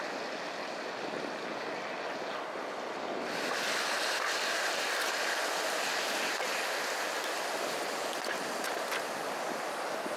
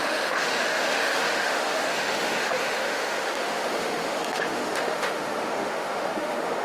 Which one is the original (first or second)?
first